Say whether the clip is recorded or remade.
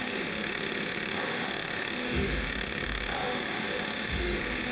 remade